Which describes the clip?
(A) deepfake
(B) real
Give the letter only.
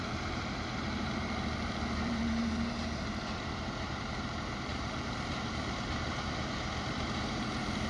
A